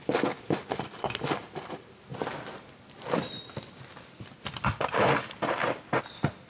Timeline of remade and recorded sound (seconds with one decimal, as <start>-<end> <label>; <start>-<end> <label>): 0.0-6.5 recorded